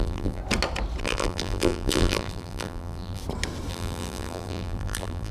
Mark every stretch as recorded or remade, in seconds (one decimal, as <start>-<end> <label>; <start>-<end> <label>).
0.0-0.4 remade; 0.4-1.0 recorded; 1.0-3.2 remade; 3.2-3.7 recorded; 3.7-5.3 remade